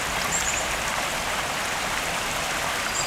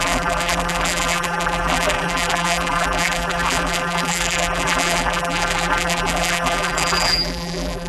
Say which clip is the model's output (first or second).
second